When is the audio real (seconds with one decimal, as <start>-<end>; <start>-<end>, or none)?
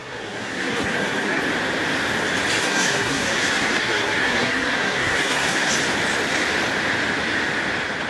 1.4-2.6; 5.7-8.1